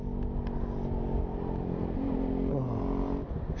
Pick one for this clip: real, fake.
real